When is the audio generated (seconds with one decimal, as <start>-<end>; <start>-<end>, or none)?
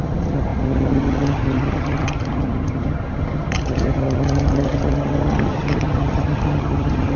0.0-7.2